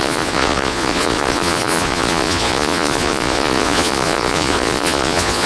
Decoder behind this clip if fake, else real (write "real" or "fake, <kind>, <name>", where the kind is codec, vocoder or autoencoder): fake, vocoder, Vocos